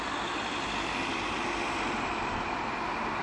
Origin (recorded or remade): recorded